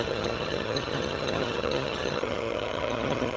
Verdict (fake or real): fake